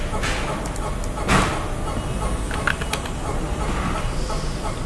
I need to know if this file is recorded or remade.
recorded